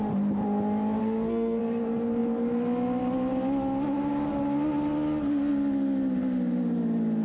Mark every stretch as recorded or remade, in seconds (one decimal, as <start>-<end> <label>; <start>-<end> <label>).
0.0-1.0 recorded; 1.0-1.6 remade; 1.6-7.2 recorded